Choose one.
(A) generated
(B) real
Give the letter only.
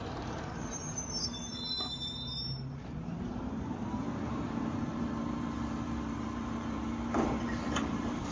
A